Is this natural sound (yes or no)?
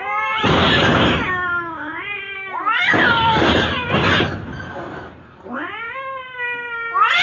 yes